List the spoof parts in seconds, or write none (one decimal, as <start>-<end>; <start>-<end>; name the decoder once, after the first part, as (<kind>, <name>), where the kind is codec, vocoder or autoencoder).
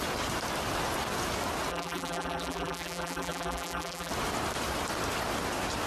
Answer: 1.7-4.1 (vocoder, BigVGAN v2)